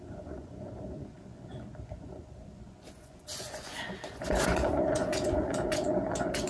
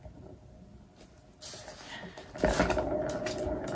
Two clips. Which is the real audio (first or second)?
second